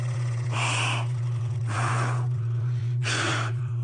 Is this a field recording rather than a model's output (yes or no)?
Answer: no